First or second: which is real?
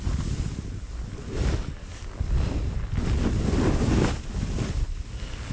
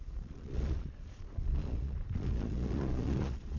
first